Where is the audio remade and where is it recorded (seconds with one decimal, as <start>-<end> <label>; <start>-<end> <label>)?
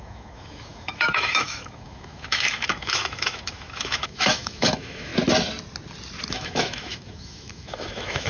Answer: 0.0-5.1 remade; 5.1-6.3 recorded; 6.3-8.3 remade